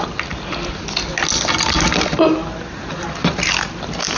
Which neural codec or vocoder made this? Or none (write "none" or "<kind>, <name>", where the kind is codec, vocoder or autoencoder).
none